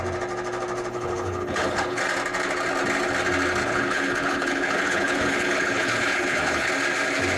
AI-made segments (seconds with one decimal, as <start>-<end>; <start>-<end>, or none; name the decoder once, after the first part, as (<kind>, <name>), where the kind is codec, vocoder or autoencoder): 0.9-2.0 (codec, HILCodec); 3.6-6.7